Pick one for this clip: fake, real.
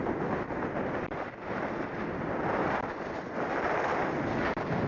real